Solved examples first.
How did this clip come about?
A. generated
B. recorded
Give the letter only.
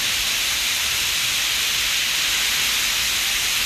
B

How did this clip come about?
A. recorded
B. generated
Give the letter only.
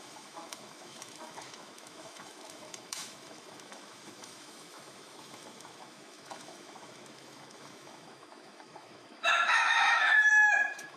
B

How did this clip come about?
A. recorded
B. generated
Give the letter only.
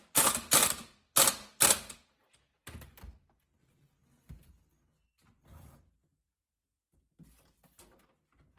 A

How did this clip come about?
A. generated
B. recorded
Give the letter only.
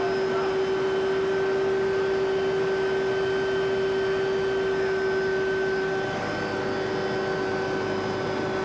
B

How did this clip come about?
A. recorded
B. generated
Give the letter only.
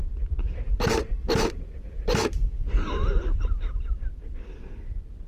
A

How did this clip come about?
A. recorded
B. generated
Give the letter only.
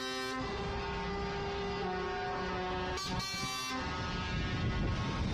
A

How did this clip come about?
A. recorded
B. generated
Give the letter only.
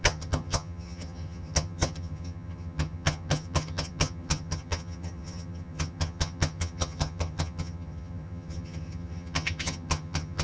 B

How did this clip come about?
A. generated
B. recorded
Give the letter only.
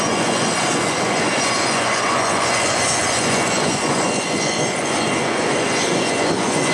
A